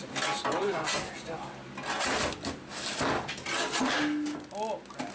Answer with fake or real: real